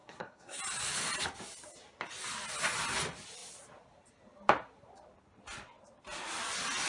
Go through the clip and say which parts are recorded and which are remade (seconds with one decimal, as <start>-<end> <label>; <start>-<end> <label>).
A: 0.0-0.6 remade; 0.6-6.9 recorded